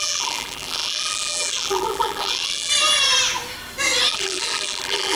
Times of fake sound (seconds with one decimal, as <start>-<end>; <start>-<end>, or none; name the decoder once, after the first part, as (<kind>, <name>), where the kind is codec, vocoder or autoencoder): 0.0-2.7 (vocoder, BigVGAN v2); 4.1-5.2